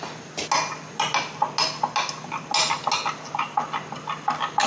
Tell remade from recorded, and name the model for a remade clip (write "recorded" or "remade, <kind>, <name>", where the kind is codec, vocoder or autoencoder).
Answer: recorded